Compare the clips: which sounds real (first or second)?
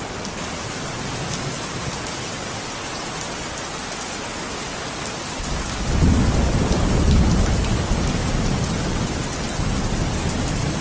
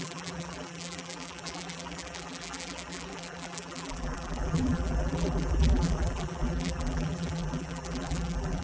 first